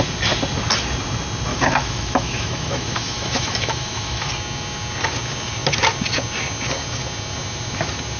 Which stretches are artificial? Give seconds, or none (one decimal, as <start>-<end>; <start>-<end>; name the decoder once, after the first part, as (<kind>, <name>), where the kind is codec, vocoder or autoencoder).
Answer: 1.5-4.3 (autoencoder, DAC-VAE)